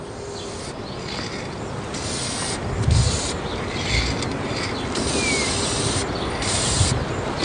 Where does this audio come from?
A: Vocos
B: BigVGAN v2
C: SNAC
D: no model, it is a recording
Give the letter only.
D